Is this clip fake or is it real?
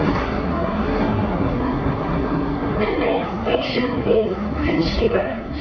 fake